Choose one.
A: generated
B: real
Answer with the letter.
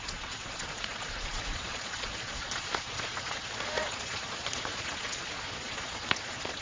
A